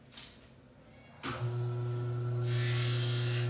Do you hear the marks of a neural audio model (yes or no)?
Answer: no